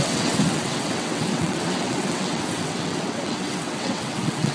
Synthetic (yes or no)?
yes